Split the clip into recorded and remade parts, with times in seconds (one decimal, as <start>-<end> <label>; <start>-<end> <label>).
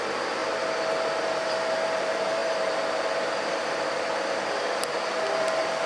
0.0-0.4 remade; 0.4-1.5 recorded; 1.5-5.9 remade